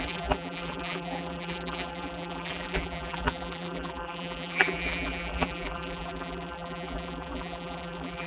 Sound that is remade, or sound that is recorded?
remade